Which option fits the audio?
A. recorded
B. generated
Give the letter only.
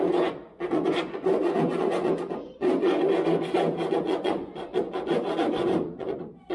B